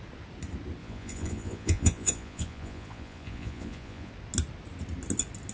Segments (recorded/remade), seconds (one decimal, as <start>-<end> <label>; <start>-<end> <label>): 0.0-0.8 recorded; 0.8-4.1 remade; 4.1-5.5 recorded